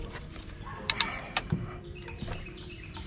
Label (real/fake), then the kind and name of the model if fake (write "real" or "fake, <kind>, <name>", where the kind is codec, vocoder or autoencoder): fake, vocoder, BigVGAN v2